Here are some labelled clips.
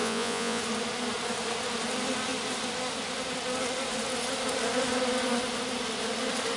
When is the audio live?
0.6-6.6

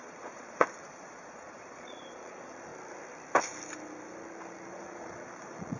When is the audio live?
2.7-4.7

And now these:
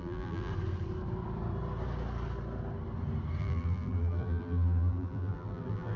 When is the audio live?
0.5-3.4